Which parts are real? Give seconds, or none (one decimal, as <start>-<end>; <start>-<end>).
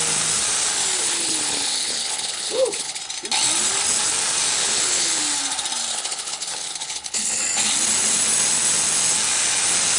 0.0-1.0; 3.0-4.6; 5.2-5.9; 7.4-10.0